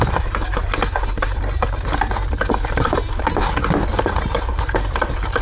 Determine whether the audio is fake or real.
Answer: real